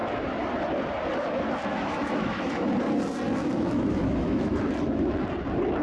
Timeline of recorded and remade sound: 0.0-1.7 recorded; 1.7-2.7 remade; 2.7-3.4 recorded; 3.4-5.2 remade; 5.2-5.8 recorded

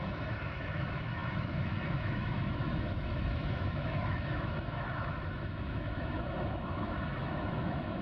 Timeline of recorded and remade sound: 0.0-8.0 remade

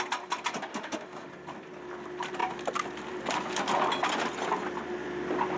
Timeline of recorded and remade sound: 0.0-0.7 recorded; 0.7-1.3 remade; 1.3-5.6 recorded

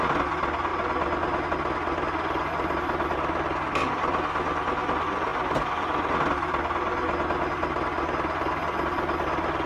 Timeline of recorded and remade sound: 0.0-9.7 recorded

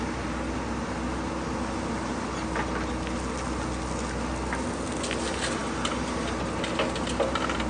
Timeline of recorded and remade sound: 0.0-7.7 recorded

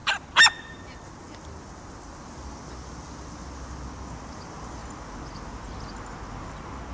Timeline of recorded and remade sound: 0.0-6.9 recorded